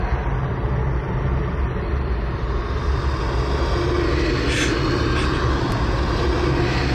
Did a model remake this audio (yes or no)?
no